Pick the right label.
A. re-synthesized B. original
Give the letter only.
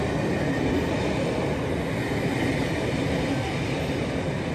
B